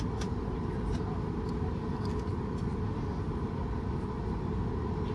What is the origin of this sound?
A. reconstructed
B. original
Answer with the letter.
B